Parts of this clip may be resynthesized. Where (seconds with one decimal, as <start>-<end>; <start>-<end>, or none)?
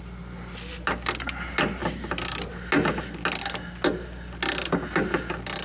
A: none